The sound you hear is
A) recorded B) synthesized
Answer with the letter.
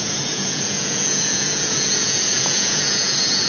B